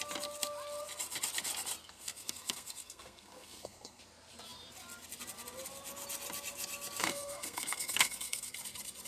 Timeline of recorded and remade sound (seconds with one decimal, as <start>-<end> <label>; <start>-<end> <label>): 0.0-1.8 recorded; 1.8-4.0 remade; 4.0-7.0 recorded; 7.0-8.5 remade; 8.5-9.1 recorded